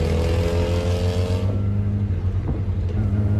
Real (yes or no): yes